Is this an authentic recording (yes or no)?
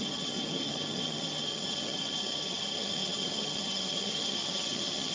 no